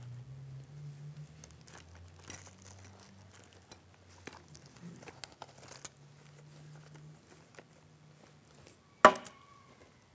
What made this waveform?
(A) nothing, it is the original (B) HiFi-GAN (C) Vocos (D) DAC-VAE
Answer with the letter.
A